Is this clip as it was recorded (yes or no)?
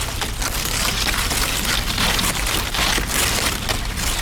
yes